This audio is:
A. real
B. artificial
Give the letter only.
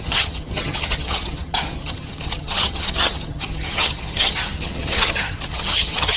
B